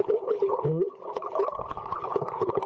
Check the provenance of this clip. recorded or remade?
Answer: remade